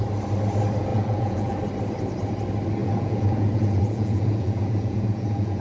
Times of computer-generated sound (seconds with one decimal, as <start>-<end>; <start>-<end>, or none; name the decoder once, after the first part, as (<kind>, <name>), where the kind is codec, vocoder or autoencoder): 0.9-1.6 (vocoder, Vocos); 2.8-5.6

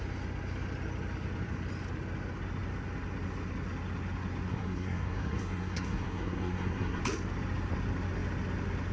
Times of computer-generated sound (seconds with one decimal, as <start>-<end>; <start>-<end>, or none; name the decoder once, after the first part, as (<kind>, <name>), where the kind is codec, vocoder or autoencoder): 4.5-7.0 (codec, SNAC)

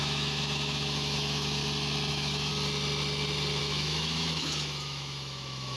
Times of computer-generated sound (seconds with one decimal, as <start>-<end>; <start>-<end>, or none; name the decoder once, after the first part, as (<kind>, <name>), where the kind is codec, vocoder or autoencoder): 0.0-1.6 (autoencoder, DAC-VAE); 2.1-2.5; 3.6-5.8

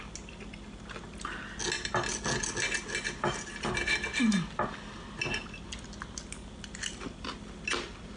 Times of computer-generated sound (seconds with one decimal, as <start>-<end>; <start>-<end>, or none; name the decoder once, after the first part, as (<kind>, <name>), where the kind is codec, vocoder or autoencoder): none

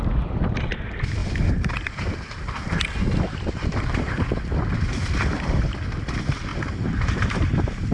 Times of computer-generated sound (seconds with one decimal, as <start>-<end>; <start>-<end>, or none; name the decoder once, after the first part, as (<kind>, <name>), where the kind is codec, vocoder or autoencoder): none